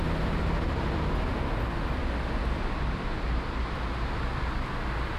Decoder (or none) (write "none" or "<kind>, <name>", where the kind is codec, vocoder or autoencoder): none